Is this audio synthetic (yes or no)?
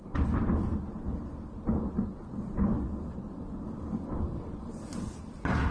no